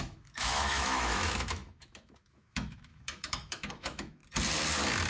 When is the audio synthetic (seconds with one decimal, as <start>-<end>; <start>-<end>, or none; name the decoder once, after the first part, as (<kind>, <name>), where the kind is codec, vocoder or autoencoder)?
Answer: 0.0-4.2 (autoencoder, DAC-VAE)

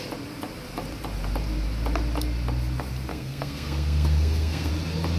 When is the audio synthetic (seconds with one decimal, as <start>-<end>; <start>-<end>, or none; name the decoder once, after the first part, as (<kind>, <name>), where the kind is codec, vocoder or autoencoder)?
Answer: 3.1-4.7 (codec, SNAC)